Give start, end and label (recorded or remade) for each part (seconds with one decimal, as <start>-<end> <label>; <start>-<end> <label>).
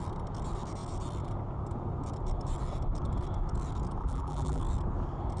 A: 0.0-4.0 recorded; 4.0-4.6 remade; 4.6-5.4 recorded